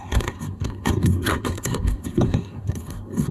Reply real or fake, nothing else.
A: fake